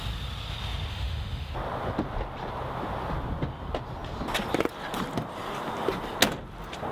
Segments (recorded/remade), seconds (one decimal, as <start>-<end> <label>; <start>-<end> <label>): 0.0-0.9 recorded; 0.9-1.5 remade; 1.5-6.9 recorded